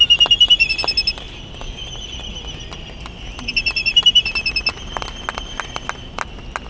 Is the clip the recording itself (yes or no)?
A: yes